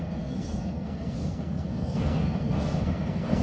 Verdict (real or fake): fake